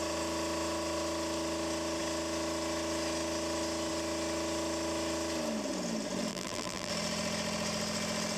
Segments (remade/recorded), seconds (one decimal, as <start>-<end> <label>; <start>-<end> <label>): 0.0-6.3 recorded; 6.3-6.9 remade; 6.9-8.4 recorded